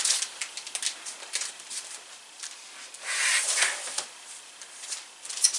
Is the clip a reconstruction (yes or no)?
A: no